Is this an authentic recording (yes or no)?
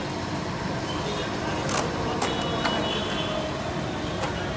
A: yes